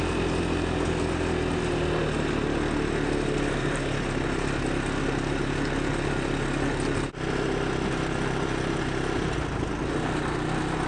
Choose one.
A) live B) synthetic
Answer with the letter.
A